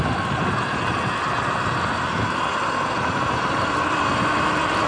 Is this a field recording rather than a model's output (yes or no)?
yes